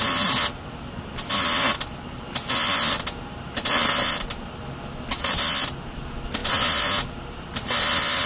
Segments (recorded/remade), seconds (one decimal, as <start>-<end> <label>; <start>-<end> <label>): 0.0-8.3 recorded